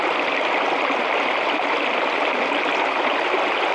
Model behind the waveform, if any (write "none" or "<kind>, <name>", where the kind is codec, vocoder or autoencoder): none